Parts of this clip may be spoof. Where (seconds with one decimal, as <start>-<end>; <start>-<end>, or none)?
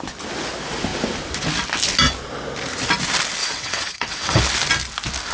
3.4-4.4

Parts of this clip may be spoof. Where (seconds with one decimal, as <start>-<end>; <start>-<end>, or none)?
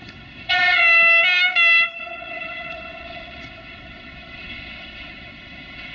0.0-0.8; 2.0-5.9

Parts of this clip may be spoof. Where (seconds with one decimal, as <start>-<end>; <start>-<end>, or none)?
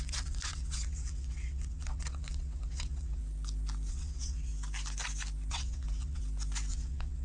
0.0-3.2; 3.9-4.5; 5.5-6.2; 6.7-7.2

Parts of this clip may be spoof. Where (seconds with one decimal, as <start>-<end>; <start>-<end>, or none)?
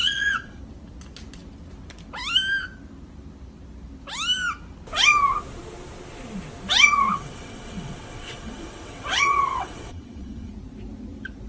0.0-0.6; 7.0-10.5